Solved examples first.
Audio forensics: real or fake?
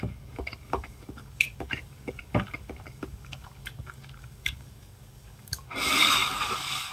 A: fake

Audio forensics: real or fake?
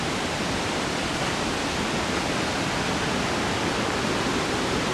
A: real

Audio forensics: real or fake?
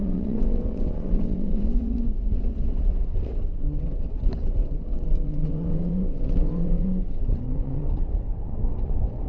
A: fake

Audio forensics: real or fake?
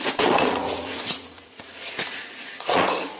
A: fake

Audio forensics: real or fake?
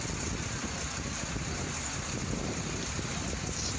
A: real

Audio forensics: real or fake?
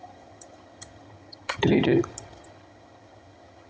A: fake